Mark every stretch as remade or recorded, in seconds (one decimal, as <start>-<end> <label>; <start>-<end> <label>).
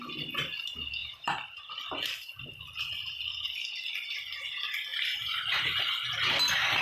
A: 0.0-1.0 recorded; 1.0-1.6 remade; 1.6-4.9 recorded; 4.9-5.8 remade; 5.8-6.8 recorded